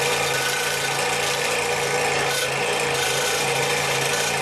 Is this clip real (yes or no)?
yes